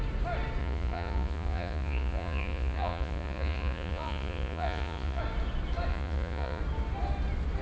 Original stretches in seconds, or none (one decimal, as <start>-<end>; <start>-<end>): 0.0-0.6; 5.2-5.9; 6.6-7.6